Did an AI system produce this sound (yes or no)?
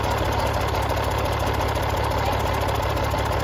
no